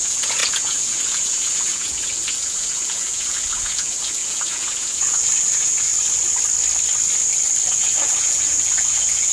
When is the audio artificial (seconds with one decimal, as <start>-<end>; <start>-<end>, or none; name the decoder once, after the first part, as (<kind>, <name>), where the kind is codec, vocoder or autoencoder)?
0.0-5.9 (vocoder, Vocos); 7.7-9.3

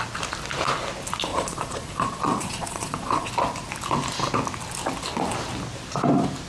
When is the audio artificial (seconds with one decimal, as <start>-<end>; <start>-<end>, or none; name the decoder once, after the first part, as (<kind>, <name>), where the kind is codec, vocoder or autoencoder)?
1.3-3.3 (vocoder, Vocos)

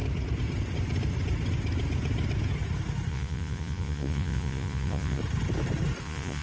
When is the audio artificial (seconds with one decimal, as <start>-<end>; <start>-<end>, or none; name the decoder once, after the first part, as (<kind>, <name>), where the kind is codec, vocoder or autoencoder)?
3.1-5.2 (vocoder, Vocos); 6.0-6.4

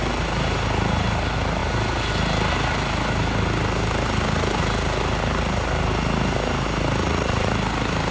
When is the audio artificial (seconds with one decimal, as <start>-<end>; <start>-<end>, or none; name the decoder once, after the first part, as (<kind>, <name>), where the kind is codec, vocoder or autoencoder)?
7.0-7.5 (vocoder, Vocos)

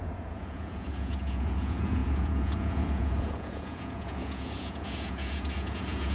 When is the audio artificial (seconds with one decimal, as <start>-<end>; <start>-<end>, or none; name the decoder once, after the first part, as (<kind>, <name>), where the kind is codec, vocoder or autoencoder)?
0.0-6.1 (vocoder, Vocos)

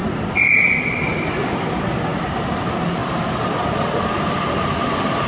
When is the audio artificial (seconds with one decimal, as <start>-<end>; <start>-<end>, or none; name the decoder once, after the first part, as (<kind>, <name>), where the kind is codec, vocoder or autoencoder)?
none